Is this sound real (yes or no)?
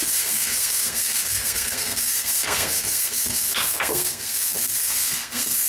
no